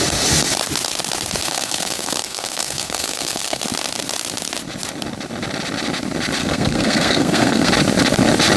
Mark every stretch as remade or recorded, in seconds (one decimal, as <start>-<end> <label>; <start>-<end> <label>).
0.0-1.4 recorded; 1.4-3.6 remade; 3.6-6.4 recorded; 6.4-7.7 remade; 7.7-8.6 recorded